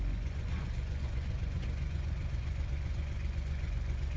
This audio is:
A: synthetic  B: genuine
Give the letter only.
A